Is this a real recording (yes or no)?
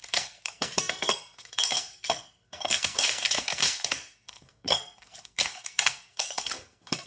no